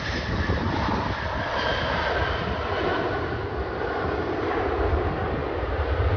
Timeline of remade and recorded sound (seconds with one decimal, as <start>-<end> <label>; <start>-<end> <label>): 0.0-2.9 remade; 2.9-3.9 recorded; 3.9-5.4 remade; 5.4-6.2 recorded